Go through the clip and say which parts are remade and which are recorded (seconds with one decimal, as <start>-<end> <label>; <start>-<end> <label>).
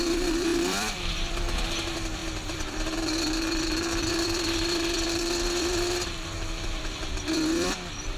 0.0-8.2 remade